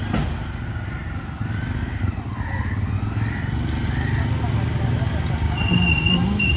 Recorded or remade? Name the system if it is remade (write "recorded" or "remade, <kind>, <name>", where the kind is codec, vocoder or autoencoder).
recorded